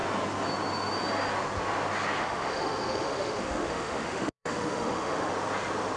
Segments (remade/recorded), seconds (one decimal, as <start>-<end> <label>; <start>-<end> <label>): 0.0-2.2 recorded; 2.2-5.3 remade; 5.3-6.0 recorded